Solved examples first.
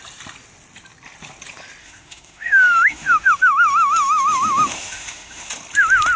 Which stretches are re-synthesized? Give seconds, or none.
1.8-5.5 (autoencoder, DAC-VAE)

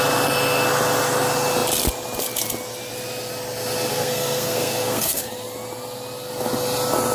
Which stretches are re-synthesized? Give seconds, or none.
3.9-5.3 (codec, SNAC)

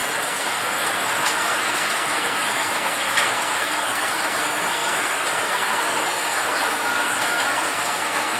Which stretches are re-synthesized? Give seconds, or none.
0.0-8.4 (codec, SNAC)

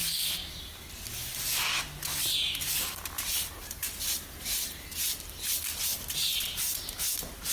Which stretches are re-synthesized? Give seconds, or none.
none

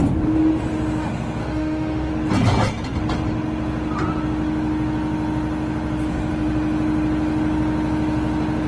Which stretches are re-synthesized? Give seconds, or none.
1.4-2.1 (autoencoder, DAC-VAE)

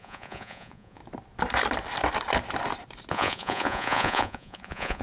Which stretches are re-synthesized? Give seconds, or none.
0.0-1.0 (vocoder, Vocos); 3.1-5.0

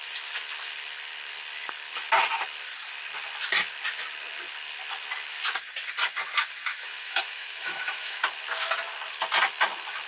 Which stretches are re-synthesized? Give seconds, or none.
6.7-8.2 (autoencoder, DAC-VAE)